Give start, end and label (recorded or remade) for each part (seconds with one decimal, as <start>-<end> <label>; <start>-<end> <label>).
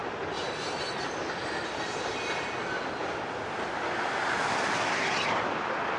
0.0-2.6 recorded; 2.6-6.0 remade